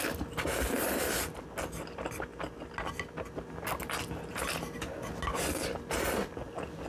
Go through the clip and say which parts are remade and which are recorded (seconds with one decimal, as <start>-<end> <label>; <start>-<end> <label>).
0.0-6.9 recorded